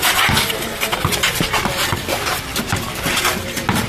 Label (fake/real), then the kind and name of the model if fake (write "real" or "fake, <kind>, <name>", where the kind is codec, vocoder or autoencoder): real